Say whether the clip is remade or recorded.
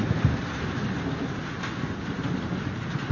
recorded